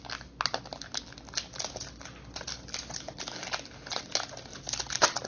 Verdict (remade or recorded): recorded